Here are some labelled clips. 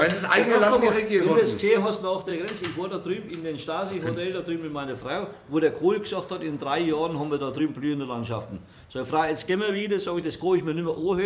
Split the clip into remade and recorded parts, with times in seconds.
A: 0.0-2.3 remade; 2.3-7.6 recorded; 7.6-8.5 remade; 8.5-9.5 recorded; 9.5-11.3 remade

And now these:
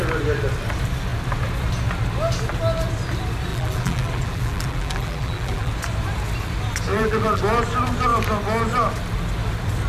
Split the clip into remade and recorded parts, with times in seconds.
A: 0.0-3.5 recorded; 3.5-5.7 remade; 5.7-6.9 recorded; 6.9-7.4 remade; 7.4-9.9 recorded

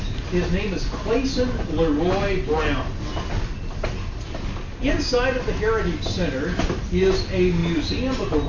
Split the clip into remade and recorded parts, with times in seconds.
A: 0.0-8.5 recorded

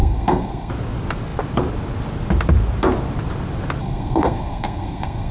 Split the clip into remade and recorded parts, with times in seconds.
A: 0.0-0.7 remade; 0.7-3.8 recorded; 3.8-5.3 remade

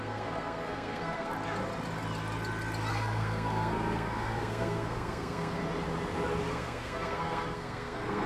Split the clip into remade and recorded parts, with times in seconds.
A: 0.0-1.3 remade; 1.3-2.9 recorded; 2.9-5.6 remade; 5.6-6.5 recorded; 6.5-8.3 remade